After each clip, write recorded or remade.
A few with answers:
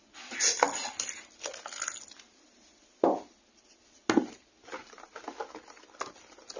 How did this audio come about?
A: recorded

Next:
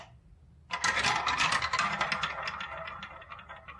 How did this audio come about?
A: recorded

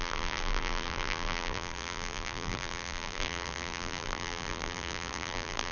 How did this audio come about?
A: remade